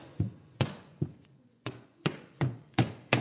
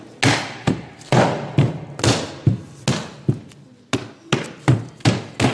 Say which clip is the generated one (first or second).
first